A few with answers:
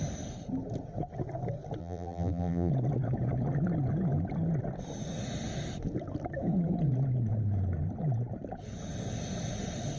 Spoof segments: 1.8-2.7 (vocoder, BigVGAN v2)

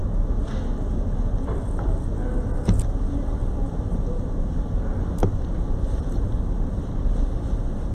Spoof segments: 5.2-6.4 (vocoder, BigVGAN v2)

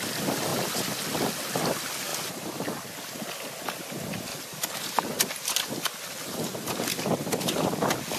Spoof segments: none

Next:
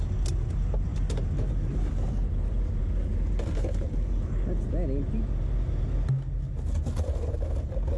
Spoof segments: none

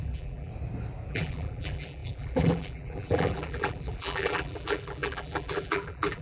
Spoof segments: 0.0-0.5 (vocoder, BigVGAN v2); 1.1-6.2

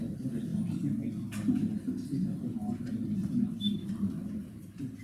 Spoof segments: 0.0-0.5 (vocoder, BigVGAN v2); 3.5-5.0

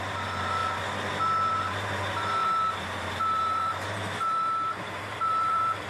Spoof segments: 0.0-0.6 (vocoder, BigVGAN v2); 1.5-5.9

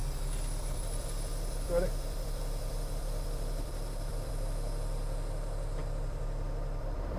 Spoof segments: 0.0-4.3 (vocoder, BigVGAN v2); 5.8-7.2